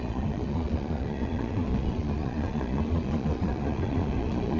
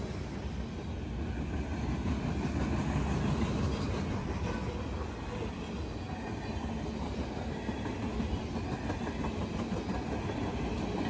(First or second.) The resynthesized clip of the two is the first